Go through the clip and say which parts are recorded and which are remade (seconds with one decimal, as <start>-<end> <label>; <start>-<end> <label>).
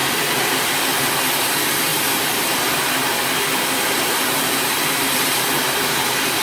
0.0-0.8 remade; 0.8-6.4 recorded